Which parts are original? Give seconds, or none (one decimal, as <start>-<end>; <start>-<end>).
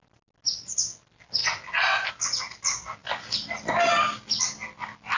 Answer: 0.0-5.2